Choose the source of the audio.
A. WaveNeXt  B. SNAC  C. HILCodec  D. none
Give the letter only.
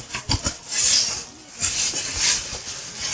D